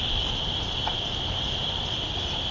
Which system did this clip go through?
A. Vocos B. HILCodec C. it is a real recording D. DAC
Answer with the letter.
C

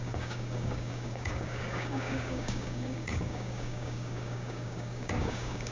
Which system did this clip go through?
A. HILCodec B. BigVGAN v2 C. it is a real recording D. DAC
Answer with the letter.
D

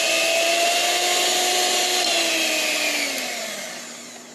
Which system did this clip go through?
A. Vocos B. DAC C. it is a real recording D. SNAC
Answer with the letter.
C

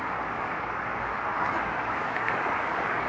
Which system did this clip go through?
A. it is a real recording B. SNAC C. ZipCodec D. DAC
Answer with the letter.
D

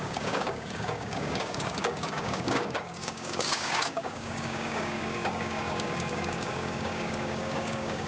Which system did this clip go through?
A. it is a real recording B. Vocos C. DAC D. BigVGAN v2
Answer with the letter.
C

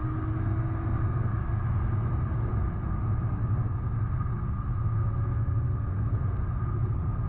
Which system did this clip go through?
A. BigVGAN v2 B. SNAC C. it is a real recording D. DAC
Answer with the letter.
C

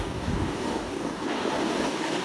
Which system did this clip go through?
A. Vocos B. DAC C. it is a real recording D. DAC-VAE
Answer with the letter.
B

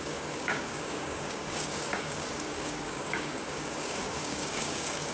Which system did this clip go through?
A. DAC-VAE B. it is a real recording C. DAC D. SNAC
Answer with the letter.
C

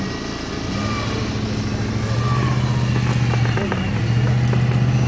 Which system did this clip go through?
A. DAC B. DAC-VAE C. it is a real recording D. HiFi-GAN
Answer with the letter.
C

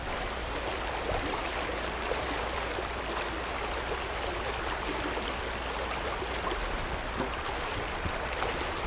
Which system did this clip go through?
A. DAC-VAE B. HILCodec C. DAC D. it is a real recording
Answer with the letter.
D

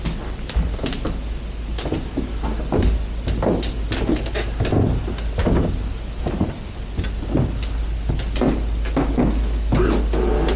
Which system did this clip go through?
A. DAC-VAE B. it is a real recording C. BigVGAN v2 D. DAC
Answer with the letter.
B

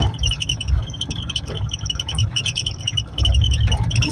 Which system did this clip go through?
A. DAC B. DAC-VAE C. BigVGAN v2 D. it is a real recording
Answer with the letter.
A